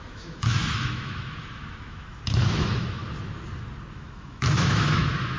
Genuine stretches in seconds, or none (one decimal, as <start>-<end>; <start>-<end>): 3.0-3.9